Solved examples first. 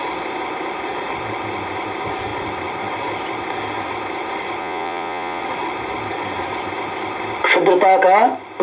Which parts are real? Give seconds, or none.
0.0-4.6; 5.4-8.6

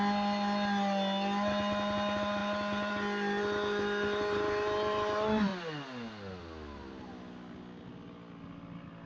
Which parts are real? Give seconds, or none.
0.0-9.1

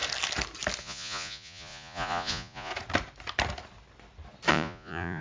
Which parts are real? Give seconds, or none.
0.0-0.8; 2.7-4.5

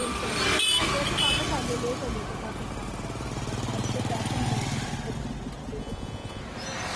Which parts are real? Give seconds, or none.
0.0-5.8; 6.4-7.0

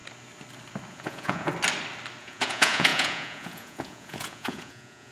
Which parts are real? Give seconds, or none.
0.0-0.9; 1.5-2.2